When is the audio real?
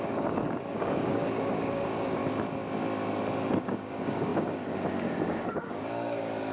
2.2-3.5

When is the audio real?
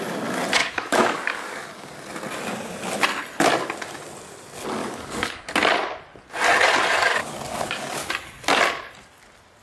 0.0-0.6; 2.0-4.8; 5.4-7.2; 8.1-9.6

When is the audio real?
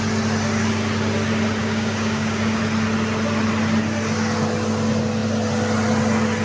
0.0-1.6; 2.6-6.4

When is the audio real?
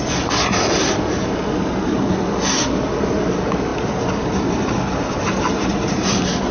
0.0-6.5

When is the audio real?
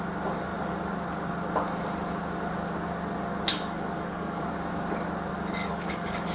0.0-3.5; 4.4-5.6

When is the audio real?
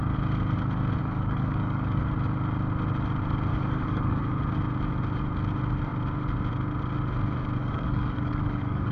0.0-1.0; 2.0-3.5; 4.4-7.6